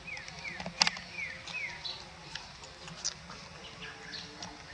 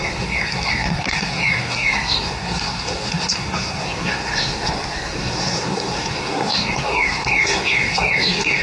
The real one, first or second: first